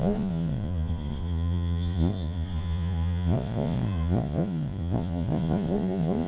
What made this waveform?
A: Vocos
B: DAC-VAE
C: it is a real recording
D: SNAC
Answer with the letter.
A